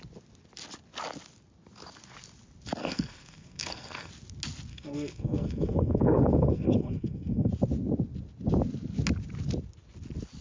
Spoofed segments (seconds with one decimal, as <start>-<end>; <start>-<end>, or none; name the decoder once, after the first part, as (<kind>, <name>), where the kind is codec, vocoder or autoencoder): 2.8-4.1 (codec, SNAC); 4.7-7.5